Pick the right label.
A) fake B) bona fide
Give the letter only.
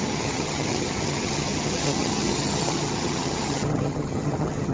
A